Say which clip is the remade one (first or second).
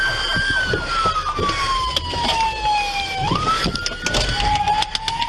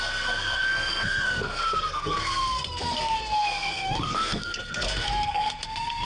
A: second